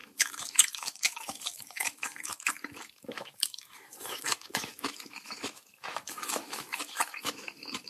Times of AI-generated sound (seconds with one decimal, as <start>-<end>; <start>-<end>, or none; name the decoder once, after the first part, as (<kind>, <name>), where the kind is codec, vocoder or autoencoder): 0.0-7.9 (autoencoder, DAC-VAE)